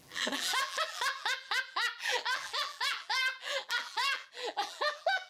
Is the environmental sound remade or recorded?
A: remade